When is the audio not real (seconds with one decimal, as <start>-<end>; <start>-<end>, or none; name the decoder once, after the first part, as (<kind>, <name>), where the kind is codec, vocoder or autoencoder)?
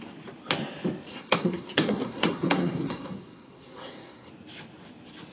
1.1-4.3 (codec, SNAC)